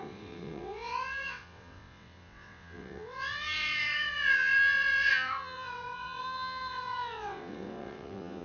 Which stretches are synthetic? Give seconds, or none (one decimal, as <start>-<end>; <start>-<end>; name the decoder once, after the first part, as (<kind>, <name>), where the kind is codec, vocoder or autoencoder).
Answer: 0.0-8.4 (vocoder, WaveNeXt)